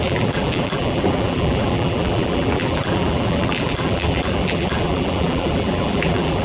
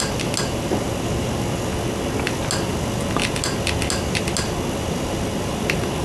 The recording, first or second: second